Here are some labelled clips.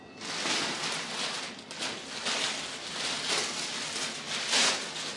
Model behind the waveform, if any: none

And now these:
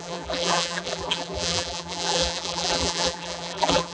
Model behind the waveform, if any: vocoder, BigVGAN v2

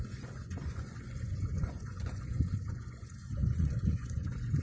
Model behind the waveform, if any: vocoder, Vocos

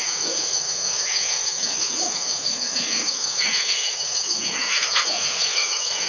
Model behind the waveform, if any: autoencoder, DAC-VAE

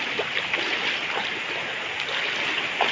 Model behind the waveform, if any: none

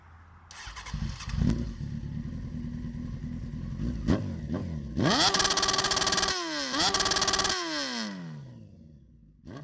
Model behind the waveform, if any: none